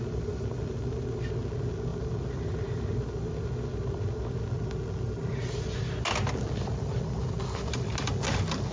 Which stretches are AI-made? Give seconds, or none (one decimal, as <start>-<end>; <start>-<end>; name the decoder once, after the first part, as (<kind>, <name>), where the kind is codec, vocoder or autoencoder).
none